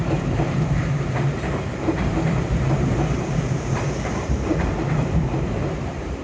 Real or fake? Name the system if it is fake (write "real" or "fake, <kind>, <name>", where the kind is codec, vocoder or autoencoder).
fake, vocoder, BigVGAN v2